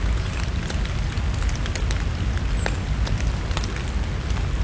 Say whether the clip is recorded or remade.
recorded